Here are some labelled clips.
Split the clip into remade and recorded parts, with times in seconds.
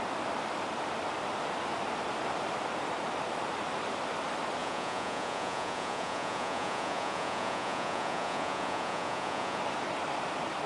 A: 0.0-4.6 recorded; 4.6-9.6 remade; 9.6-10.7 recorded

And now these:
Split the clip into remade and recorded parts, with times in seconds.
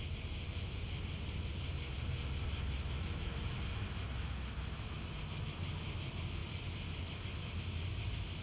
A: 0.0-8.4 recorded